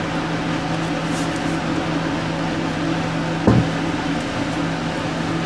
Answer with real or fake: real